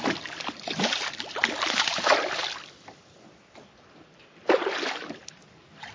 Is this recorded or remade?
recorded